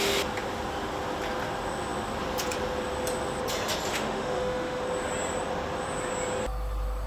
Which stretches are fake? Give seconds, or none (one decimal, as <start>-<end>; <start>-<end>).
3.9-4.8